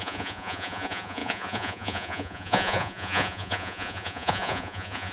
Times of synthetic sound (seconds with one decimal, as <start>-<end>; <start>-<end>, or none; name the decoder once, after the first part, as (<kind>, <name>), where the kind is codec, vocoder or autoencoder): 0.0-5.1 (vocoder, Vocos)